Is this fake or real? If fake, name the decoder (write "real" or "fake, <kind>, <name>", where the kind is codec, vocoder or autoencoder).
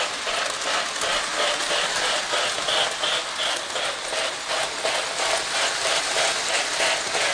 real